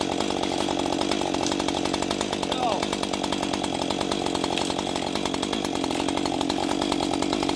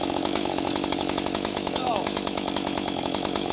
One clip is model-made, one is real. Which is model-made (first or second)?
second